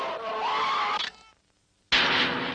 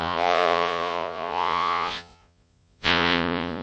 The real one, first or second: first